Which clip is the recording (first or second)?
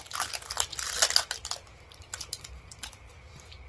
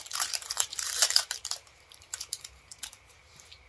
first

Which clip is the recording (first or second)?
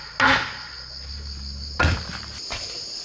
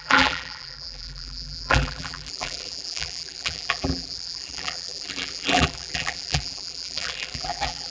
first